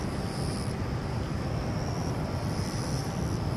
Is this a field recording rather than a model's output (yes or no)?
no